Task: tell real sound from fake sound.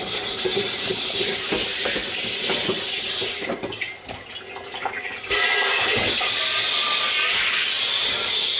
real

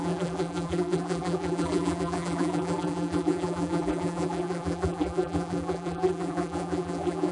fake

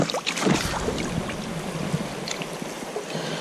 real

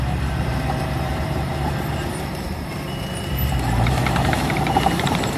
fake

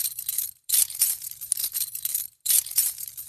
fake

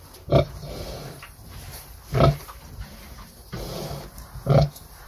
fake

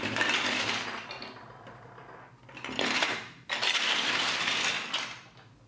real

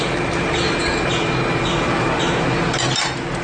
fake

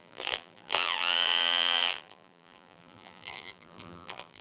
fake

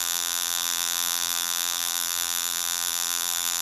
fake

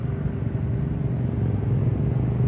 real